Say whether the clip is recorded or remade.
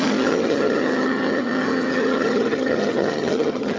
remade